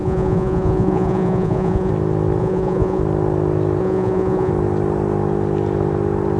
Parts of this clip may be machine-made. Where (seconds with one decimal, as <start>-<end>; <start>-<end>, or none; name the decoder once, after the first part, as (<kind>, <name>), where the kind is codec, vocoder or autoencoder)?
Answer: 0.0-1.9 (vocoder, Vocos); 2.4-3.0; 3.8-4.5